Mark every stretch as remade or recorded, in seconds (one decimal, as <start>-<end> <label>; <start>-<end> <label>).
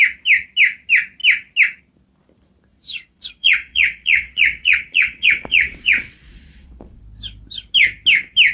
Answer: 0.0-2.7 recorded; 2.7-7.0 remade; 7.0-8.5 recorded